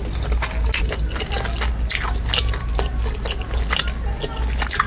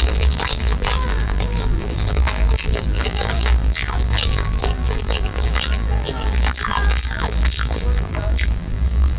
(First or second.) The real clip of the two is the first